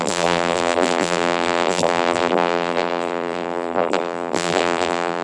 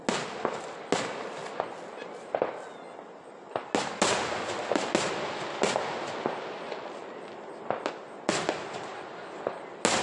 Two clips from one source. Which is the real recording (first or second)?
second